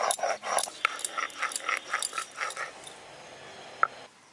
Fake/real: real